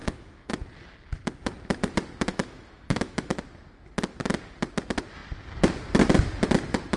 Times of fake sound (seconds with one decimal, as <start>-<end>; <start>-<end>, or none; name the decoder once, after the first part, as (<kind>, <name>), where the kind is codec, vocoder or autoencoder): 0.0-0.5 (autoencoder, DAC-VAE); 2.3-3.3